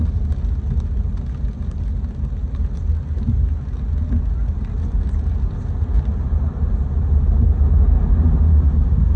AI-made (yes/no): no